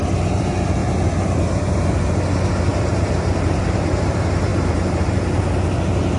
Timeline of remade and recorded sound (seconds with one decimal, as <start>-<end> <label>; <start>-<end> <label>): 0.0-2.7 recorded; 2.7-3.6 remade; 3.6-4.5 recorded; 4.5-5.2 remade; 5.2-6.2 recorded